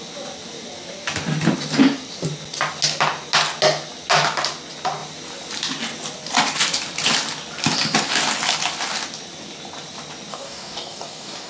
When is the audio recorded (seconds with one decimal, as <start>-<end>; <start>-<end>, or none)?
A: 0.0-10.3